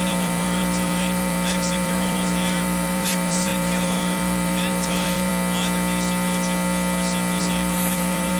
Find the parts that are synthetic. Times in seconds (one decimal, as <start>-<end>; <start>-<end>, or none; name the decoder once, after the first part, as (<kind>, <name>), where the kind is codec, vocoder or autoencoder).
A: 0.0-5.3 (vocoder, BigVGAN v2); 7.4-8.4